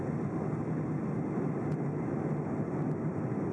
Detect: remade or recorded recorded